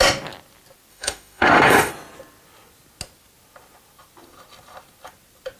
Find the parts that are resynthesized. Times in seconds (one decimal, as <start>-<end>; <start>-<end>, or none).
0.9-1.9